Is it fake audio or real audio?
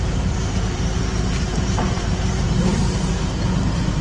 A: fake